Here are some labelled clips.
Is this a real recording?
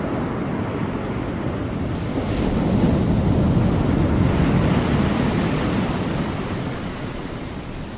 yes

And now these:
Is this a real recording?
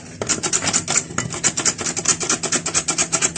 yes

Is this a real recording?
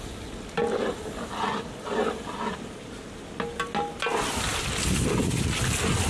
yes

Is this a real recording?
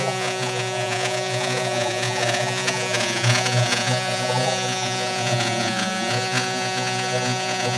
no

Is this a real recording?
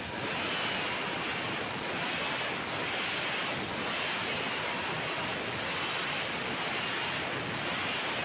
yes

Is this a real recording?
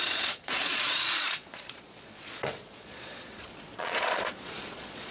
no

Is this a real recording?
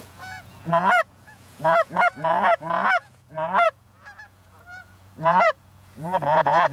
no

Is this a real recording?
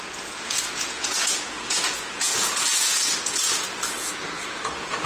no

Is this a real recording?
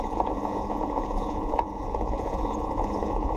no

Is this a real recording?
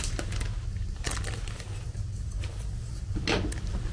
yes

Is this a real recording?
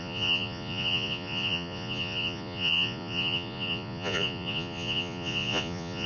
no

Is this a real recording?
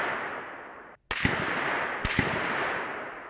yes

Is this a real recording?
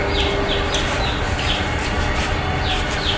yes